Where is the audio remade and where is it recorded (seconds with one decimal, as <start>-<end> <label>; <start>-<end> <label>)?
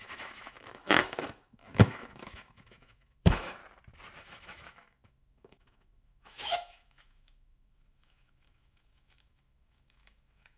0.0-3.6 remade; 3.6-4.2 recorded; 4.2-10.6 remade